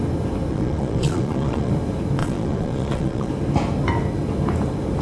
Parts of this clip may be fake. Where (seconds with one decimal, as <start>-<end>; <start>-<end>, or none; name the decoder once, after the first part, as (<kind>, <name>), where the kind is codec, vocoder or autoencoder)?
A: 0.5-1.7 (vocoder, Vocos); 2.2-3.3